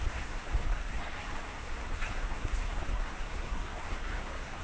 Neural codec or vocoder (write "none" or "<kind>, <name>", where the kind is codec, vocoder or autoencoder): codec, SNAC